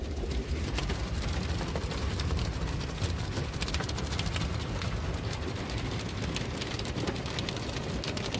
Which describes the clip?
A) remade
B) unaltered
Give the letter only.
A